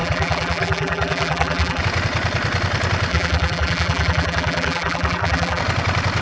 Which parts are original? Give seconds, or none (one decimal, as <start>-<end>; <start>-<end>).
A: 1.8-3.1; 5.6-6.2